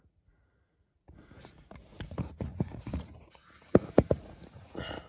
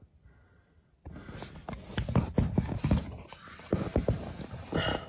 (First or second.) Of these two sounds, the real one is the second